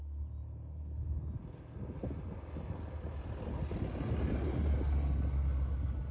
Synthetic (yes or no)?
no